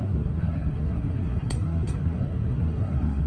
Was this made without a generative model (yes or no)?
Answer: no